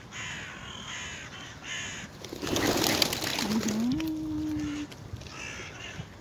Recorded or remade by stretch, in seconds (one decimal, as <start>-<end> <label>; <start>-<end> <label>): 0.0-6.2 recorded

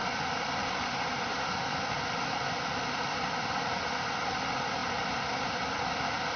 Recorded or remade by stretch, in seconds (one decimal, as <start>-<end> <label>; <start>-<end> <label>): 0.0-3.8 remade; 3.8-4.8 recorded; 4.8-5.5 remade; 5.5-6.4 recorded

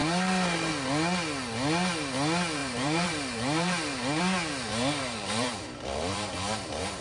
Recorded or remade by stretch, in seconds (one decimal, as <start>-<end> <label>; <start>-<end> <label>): 0.0-0.7 remade; 0.7-2.6 recorded; 2.6-4.2 remade; 4.2-4.7 recorded; 4.7-7.0 remade

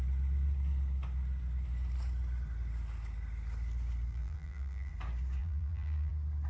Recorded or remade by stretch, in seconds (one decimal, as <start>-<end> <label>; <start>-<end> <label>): 0.0-4.1 recorded; 4.1-4.9 remade; 4.9-5.4 recorded; 5.4-6.1 remade; 6.1-6.5 recorded